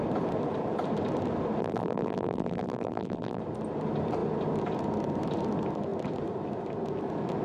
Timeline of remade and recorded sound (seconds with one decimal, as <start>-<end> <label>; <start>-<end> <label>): 0.0-1.6 recorded; 1.6-3.4 remade; 3.4-7.4 recorded